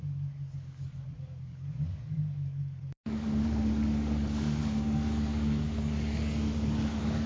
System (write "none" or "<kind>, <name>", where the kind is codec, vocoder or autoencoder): codec, DAC